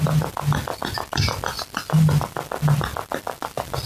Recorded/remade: recorded